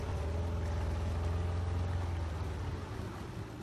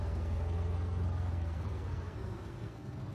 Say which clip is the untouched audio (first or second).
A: first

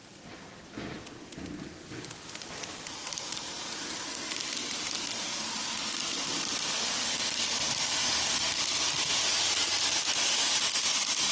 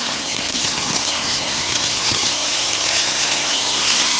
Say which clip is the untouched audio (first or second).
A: first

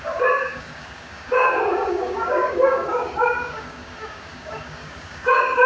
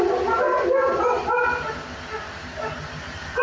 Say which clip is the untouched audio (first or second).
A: second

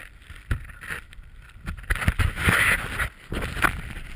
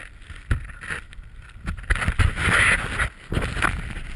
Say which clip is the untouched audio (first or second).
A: second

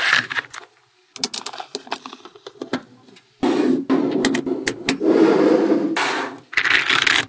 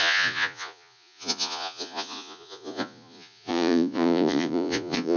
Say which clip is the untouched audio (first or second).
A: first